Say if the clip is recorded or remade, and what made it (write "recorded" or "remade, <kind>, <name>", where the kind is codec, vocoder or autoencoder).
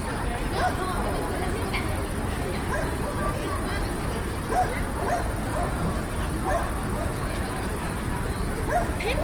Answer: recorded